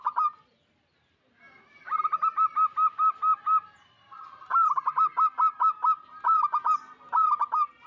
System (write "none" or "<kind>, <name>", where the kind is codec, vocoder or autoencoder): none